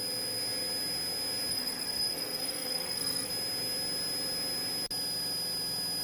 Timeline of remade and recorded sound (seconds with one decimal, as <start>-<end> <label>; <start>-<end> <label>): 0.0-1.5 recorded; 1.5-3.3 remade; 3.3-6.0 recorded